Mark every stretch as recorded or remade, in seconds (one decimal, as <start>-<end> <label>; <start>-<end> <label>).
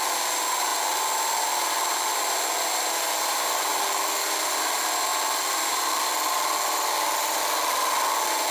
0.0-8.5 recorded